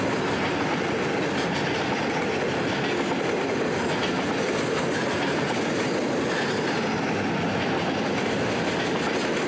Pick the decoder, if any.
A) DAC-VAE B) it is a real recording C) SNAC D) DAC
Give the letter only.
B